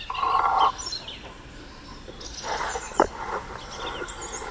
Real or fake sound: real